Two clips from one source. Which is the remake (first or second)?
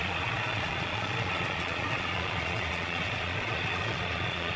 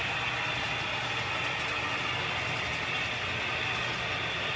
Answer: first